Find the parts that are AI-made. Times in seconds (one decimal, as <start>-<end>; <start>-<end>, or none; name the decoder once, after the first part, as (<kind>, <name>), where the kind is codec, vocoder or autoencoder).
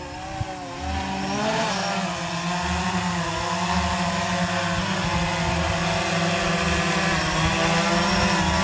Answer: none